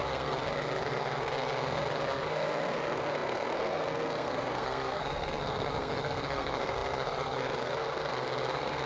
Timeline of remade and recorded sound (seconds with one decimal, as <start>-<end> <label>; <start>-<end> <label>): 0.0-8.9 remade